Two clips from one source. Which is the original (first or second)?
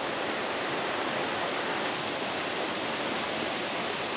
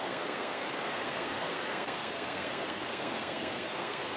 first